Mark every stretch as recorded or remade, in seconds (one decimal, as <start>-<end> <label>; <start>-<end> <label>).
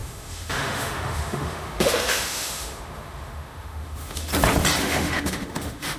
0.0-4.3 remade; 4.3-4.8 recorded; 4.8-6.0 remade